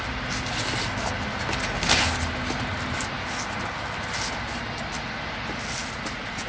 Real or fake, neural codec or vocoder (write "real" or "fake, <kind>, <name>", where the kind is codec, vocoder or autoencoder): real